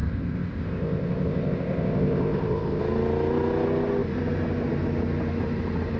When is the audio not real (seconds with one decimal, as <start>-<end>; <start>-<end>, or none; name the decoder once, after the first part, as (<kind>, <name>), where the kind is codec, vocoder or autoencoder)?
0.0-2.8 (codec, ZipCodec)